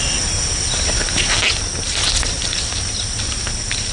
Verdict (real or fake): real